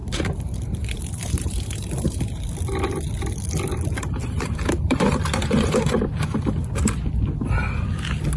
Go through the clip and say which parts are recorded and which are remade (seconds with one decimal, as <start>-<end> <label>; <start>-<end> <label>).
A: 0.0-2.4 remade; 2.4-4.2 recorded; 4.2-7.1 remade; 7.1-8.4 recorded